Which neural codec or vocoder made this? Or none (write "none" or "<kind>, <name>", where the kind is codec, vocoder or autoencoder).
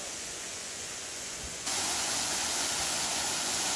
vocoder, Vocos